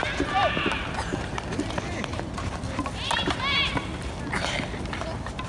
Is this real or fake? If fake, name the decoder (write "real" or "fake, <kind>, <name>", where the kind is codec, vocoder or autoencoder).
real